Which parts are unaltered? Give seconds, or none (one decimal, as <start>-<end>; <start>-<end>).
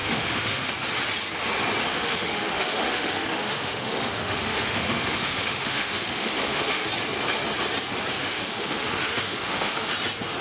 0.7-1.9; 6.9-8.2; 9.9-10.4